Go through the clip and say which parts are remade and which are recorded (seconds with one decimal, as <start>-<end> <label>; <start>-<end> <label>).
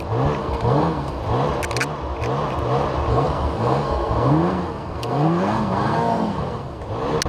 0.0-0.4 recorded; 0.4-1.2 remade; 1.2-3.1 recorded; 3.1-6.8 remade; 6.8-7.3 recorded